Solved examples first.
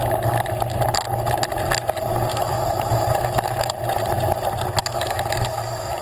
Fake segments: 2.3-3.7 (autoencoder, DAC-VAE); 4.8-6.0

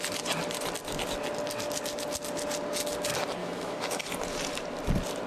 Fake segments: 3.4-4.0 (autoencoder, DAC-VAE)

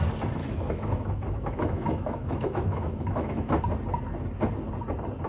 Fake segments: 0.4-3.6 (autoencoder, DAC-VAE)